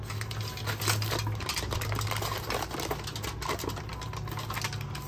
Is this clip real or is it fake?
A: real